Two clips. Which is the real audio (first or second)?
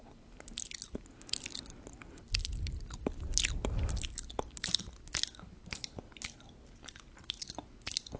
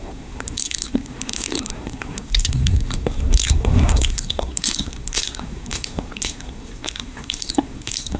first